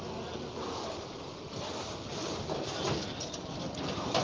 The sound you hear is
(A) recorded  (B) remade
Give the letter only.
A